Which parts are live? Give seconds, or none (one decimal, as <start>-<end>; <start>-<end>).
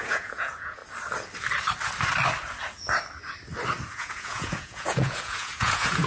0.8-3.9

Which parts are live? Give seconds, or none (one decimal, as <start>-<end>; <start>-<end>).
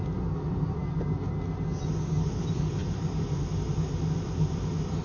0.8-2.1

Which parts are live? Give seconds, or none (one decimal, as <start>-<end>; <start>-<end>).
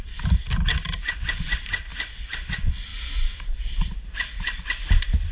0.0-5.3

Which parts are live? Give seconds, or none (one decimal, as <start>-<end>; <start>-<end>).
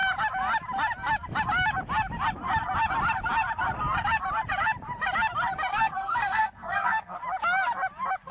0.0-5.7; 7.2-8.3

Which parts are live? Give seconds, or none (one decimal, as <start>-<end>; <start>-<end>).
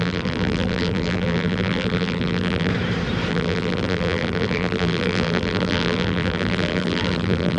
2.7-3.3